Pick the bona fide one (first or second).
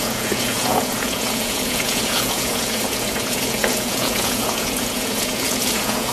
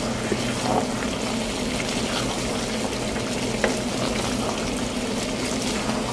second